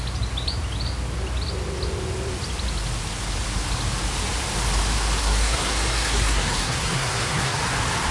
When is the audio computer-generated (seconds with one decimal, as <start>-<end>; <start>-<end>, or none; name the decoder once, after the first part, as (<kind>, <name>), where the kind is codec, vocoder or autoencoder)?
5.2-7.6 (codec, SNAC)